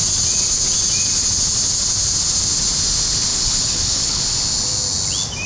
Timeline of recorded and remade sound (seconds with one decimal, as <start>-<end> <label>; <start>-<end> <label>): 0.0-3.3 recorded; 3.3-4.2 remade; 4.2-5.5 recorded